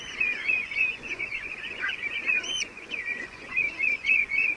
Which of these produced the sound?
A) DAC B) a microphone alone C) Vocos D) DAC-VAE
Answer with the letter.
C